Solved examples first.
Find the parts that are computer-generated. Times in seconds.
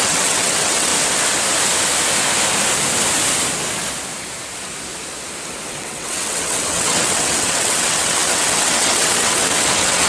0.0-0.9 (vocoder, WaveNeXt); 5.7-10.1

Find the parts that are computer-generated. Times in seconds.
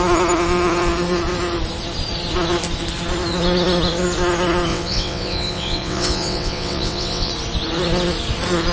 4.7-7.3 (vocoder, WaveNeXt)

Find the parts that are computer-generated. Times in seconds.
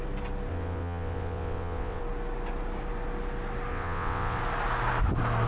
0.5-2.0 (vocoder, WaveNeXt); 3.7-4.4